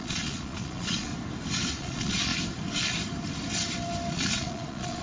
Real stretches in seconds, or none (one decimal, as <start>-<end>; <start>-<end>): 1.1-1.7; 2.3-4.1